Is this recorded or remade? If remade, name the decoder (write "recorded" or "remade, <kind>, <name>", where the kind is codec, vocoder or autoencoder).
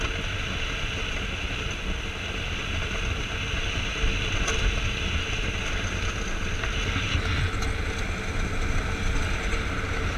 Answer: recorded